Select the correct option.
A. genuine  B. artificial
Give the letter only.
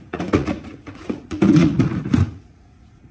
B